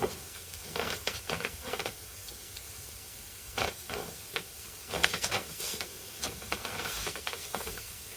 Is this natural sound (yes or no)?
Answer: no